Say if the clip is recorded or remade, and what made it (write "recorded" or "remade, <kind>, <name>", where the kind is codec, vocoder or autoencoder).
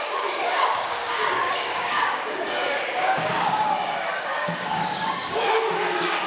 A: remade, codec, DAC